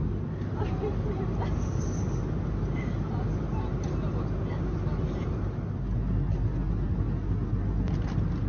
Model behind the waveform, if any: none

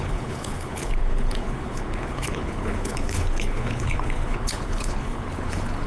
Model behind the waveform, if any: codec, HILCodec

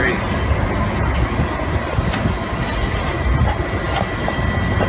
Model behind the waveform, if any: none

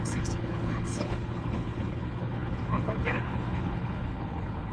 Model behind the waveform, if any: codec, HILCodec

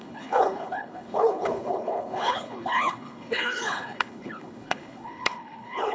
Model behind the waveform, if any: codec, HILCodec